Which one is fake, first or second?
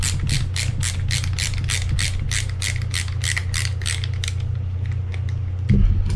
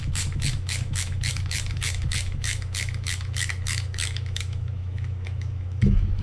second